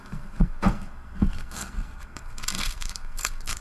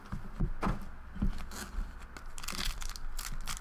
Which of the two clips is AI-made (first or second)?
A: first